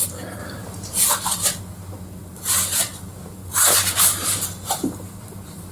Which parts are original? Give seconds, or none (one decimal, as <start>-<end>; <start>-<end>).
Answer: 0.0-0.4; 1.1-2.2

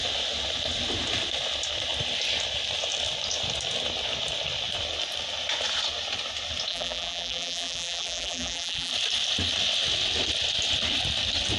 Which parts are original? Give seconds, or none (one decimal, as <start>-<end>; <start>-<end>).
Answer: 0.0-6.7; 8.9-11.6

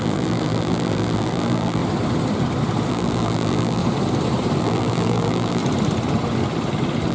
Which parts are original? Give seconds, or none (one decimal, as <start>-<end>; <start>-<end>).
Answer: 1.8-2.9; 3.8-4.6; 5.6-7.1

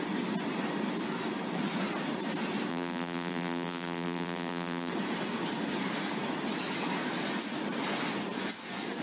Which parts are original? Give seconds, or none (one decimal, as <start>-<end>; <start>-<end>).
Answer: 0.0-2.7; 4.9-9.0

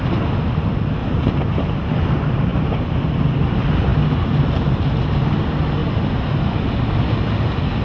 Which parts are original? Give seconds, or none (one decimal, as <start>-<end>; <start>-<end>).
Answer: 0.0-1.0; 1.9-2.5; 3.4-5.8; 6.7-7.8

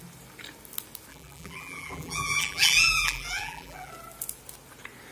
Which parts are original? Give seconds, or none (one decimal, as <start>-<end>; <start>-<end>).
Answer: 0.0-1.1; 3.9-5.1

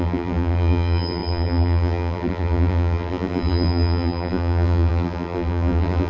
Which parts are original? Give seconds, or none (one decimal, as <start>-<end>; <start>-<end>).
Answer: none

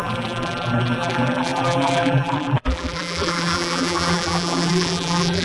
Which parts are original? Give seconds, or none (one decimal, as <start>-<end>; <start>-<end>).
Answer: none